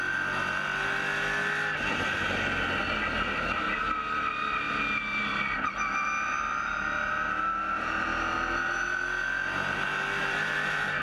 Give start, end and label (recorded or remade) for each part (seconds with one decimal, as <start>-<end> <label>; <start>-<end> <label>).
0.0-10.2 recorded; 10.2-11.0 remade